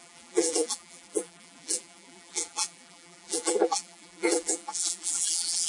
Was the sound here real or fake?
fake